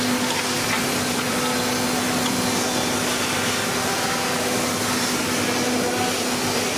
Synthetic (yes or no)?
no